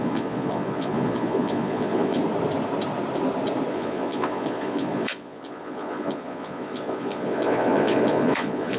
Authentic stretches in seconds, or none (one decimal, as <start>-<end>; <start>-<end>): 2.2-3.7